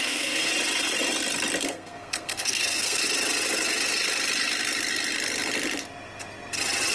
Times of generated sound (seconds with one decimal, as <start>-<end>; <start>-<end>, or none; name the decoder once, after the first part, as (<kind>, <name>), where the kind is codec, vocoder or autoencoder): 0.0-0.5 (codec, SNAC); 1.6-3.0

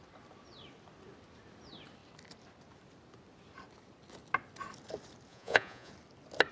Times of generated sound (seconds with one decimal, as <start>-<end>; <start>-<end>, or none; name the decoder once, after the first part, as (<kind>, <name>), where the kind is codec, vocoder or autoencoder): 5.3-5.9 (vocoder, Vocos)

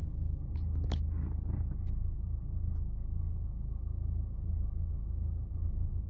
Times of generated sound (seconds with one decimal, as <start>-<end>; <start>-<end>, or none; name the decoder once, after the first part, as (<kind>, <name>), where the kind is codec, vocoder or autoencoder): 3.0-6.1 (autoencoder, DAC-VAE)

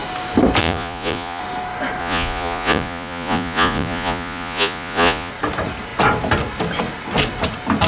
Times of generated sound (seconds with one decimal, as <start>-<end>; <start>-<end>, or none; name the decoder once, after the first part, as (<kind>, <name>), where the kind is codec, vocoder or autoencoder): 0.6-1.4 (vocoder, Vocos); 2.0-5.3